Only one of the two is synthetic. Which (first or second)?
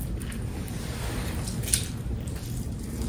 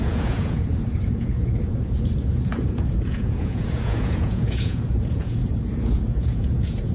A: second